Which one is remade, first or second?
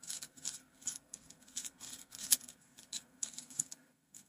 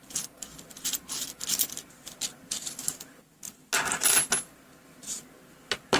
first